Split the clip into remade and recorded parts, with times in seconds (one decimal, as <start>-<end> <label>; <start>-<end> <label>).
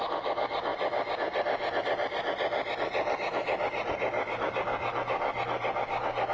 0.0-6.3 recorded